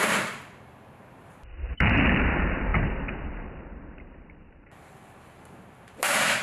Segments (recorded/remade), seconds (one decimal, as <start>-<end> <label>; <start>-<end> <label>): 0.0-2.7 remade; 2.7-3.4 recorded; 3.4-6.4 remade